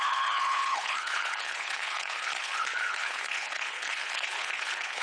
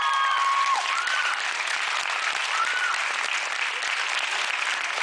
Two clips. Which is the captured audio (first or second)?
second